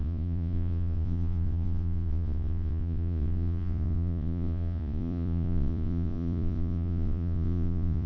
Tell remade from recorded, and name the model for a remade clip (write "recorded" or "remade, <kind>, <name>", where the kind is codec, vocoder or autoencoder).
remade, vocoder, Vocos